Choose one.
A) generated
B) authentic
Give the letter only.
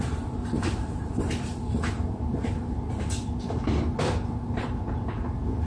B